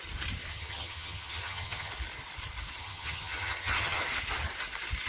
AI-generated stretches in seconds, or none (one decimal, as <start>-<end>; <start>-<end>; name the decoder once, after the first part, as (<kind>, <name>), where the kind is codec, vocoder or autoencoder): 0.5-1.9 (vocoder, HiFi-GAN); 2.8-4.0